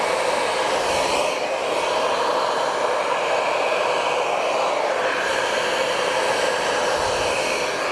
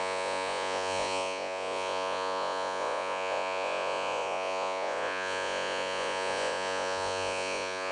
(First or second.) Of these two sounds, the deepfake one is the second